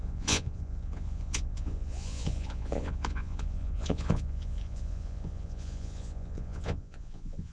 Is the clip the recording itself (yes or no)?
no